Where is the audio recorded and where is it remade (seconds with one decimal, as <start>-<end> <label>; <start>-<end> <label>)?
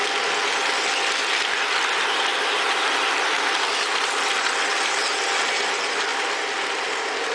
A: 0.0-7.3 recorded